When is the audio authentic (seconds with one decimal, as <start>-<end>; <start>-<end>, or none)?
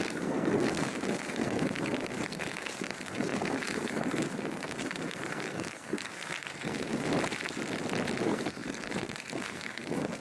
7.1-8.2